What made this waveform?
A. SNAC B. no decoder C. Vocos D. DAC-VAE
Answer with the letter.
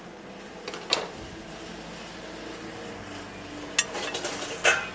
B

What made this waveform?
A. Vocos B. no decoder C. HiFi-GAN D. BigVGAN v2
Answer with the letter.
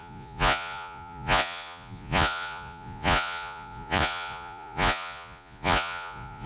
A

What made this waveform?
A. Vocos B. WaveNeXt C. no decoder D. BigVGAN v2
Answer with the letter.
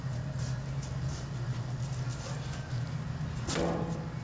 C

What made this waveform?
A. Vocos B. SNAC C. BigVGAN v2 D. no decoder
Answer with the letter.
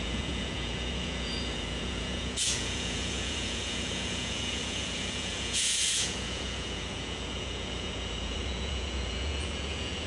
A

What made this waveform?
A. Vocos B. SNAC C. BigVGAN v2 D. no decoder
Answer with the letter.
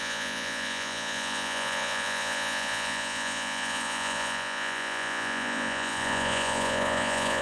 A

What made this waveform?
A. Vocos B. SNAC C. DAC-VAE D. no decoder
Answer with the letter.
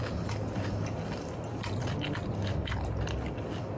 D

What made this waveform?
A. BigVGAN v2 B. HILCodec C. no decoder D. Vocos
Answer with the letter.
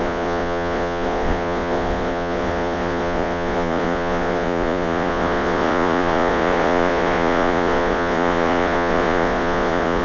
D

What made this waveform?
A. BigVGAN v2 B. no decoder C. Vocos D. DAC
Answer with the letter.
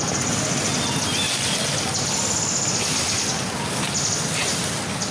B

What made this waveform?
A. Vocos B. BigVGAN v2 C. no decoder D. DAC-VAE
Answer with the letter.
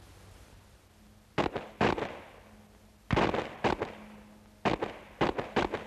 C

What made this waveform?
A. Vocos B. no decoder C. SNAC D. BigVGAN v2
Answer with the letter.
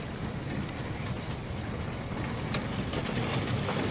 B